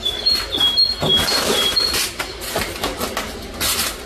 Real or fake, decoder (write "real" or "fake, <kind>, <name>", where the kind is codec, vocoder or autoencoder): real